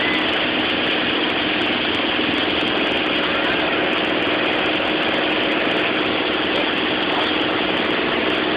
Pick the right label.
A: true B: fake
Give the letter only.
A